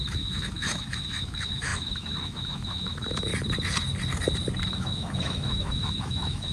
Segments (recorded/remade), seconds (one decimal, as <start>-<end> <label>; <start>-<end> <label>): 0.0-3.3 remade; 3.3-4.7 recorded; 4.7-6.5 remade